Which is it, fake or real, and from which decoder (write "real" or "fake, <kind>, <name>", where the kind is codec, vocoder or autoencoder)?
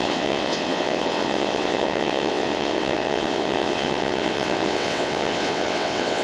fake, vocoder, WaveNeXt